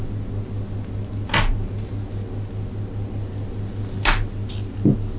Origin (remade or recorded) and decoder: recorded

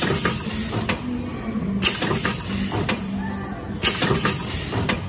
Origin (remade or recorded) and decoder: recorded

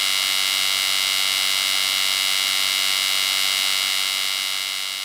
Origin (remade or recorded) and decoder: recorded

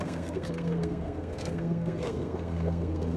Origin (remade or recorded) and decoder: remade, codec, SNAC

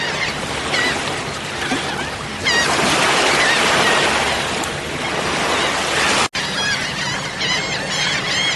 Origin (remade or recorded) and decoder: recorded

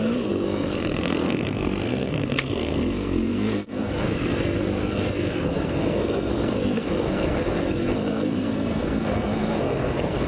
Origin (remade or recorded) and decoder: remade, codec, SNAC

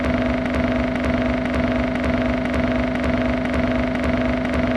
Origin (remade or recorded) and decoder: recorded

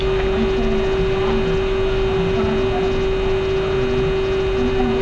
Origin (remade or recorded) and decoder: recorded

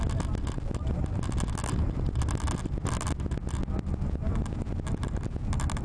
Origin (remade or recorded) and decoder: recorded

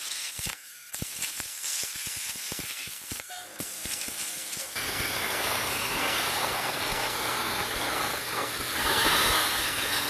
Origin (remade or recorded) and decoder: remade, codec, SNAC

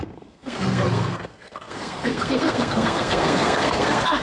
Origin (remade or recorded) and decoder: remade, codec, SNAC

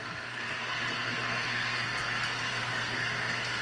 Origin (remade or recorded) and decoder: remade, codec, SNAC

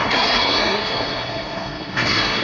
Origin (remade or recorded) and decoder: remade, codec, SNAC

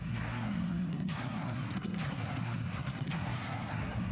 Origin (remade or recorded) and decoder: remade, codec, SNAC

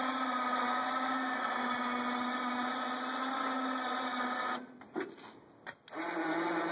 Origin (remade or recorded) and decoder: recorded